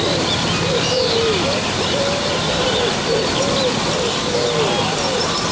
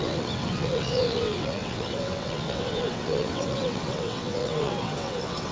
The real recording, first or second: first